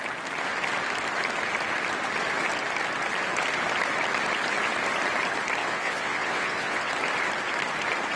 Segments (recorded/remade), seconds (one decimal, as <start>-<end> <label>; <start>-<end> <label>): 0.0-5.6 recorded; 5.6-6.9 remade; 6.9-8.2 recorded